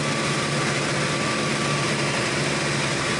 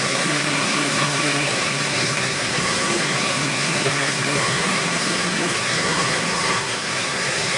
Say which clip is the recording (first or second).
first